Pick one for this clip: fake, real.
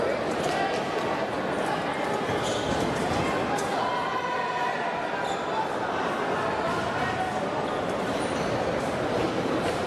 real